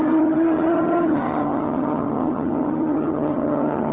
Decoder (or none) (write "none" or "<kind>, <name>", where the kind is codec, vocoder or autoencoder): vocoder, HiFi-GAN